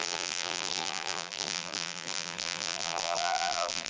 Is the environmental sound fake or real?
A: fake